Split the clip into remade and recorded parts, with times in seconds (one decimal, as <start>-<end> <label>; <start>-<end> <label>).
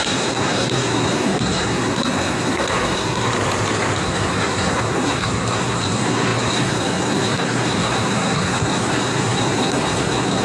0.0-3.3 remade; 3.3-4.0 recorded; 4.0-10.4 remade